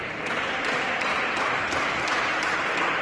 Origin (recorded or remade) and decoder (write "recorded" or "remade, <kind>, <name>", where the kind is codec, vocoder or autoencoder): recorded